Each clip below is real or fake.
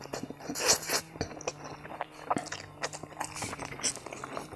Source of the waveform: real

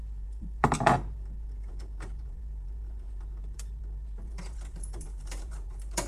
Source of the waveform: fake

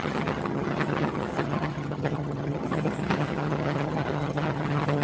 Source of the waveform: fake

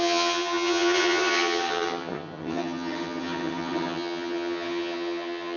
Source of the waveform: fake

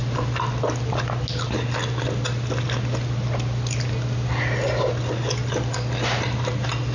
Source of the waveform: real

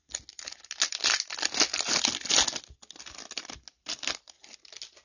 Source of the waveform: real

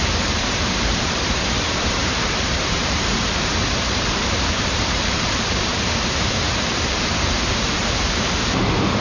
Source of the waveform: fake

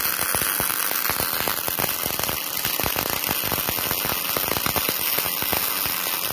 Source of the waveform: real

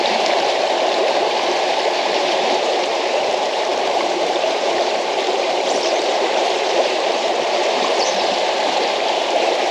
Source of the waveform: fake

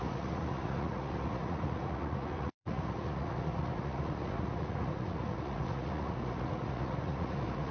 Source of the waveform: fake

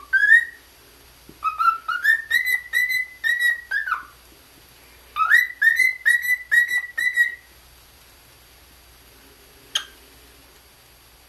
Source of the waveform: real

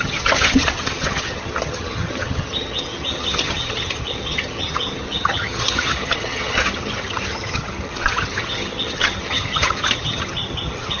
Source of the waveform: fake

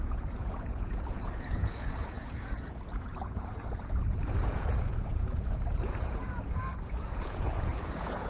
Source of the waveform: fake